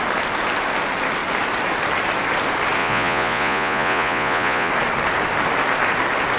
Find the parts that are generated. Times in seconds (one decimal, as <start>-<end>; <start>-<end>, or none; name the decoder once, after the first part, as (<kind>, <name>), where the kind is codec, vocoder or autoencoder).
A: 2.8-4.7 (vocoder, Vocos)